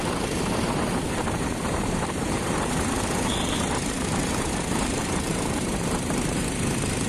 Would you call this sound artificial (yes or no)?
yes